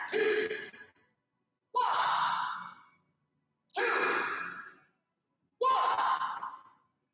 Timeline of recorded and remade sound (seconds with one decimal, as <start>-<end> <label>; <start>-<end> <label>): 0.0-7.1 recorded